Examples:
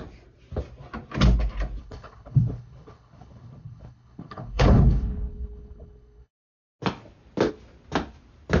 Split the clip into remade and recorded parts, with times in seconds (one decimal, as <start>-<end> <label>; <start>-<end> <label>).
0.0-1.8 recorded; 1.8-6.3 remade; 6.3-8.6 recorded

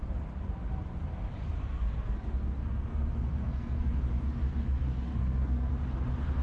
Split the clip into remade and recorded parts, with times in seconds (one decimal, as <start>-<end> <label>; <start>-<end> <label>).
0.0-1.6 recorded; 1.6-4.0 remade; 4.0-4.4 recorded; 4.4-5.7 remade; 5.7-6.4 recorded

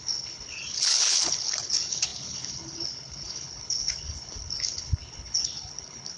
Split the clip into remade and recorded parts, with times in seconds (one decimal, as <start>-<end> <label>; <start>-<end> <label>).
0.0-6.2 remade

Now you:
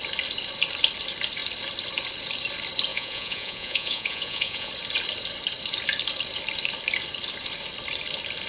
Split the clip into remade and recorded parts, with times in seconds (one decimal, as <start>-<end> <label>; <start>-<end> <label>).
0.0-2.9 recorded; 2.9-4.7 remade; 4.7-8.5 recorded

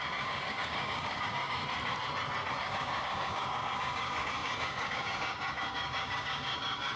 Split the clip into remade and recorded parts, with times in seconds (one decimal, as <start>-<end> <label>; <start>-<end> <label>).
0.0-1.6 remade; 1.6-2.5 recorded; 2.5-7.0 remade

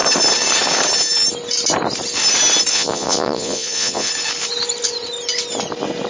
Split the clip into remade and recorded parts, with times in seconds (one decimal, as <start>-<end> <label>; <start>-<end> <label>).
0.0-2.7 recorded; 2.7-4.1 remade; 4.1-6.1 recorded